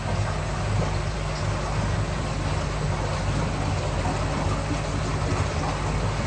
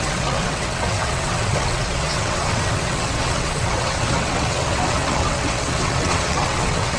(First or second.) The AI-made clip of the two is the second